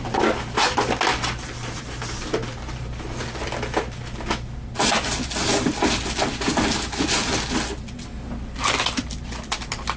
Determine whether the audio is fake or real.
real